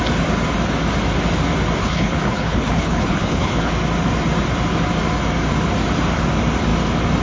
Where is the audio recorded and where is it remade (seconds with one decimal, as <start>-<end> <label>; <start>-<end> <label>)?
0.0-1.8 recorded; 1.8-3.7 remade; 3.7-7.2 recorded